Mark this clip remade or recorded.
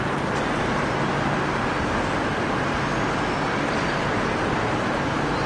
recorded